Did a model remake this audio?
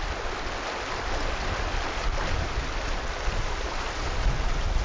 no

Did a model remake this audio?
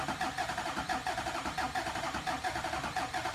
yes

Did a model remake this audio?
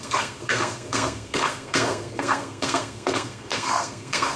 yes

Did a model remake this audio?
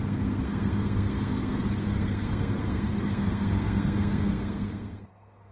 yes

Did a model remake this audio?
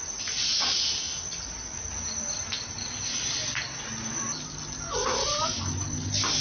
no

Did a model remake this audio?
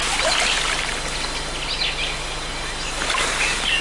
no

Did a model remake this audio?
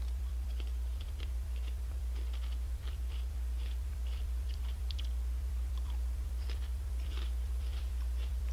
yes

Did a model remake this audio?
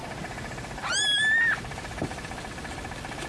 no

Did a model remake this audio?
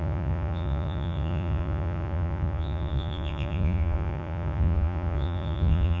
yes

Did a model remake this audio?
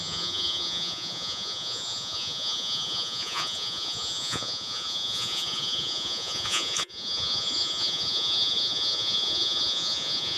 yes